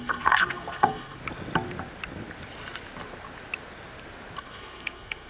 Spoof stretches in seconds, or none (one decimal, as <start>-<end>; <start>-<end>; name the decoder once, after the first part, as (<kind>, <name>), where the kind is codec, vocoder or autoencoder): 0.0-1.2 (codec, SNAC); 4.4-5.3